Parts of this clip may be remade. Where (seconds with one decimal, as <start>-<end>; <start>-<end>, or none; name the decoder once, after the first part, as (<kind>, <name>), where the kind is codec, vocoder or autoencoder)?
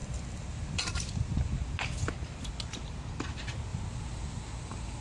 0.0-1.1 (vocoder, BigVGAN v2); 3.7-4.6